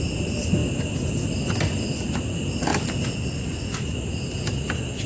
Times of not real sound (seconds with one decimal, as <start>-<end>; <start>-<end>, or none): none